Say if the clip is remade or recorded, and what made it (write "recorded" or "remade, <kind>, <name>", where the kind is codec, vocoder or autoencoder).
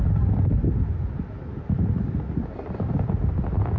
recorded